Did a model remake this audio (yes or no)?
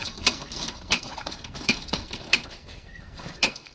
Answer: yes